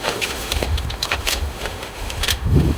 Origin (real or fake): fake